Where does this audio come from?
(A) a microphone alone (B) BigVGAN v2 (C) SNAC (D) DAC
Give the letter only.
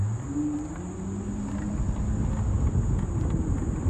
A